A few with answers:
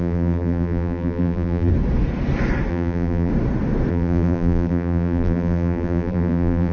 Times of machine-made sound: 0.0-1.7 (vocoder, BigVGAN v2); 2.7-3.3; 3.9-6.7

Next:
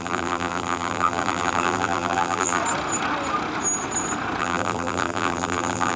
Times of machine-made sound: 0.0-2.6 (vocoder, BigVGAN v2); 4.4-6.0

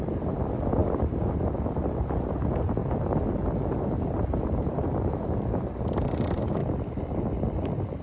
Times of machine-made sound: 0.8-1.3 (vocoder, BigVGAN v2); 2.8-5.0; 6.6-8.0

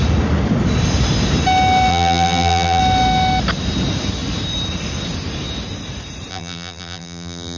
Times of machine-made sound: 1.9-2.8 (vocoder, BigVGAN v2); 6.3-7.6

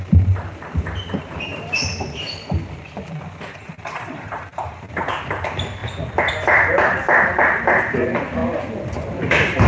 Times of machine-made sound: 0.0-5.8 (vocoder, BigVGAN v2); 6.3-8.4; 9.2-9.7